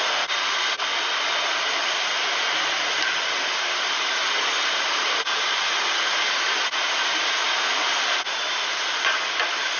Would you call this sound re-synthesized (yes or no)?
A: no